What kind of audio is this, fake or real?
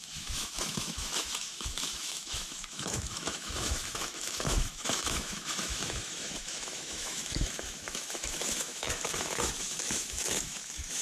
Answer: fake